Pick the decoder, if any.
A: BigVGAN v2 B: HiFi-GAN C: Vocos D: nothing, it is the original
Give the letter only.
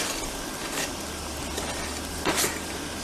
D